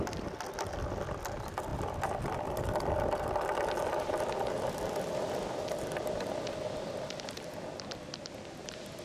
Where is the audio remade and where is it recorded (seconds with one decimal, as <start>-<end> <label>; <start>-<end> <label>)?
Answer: 0.0-9.0 recorded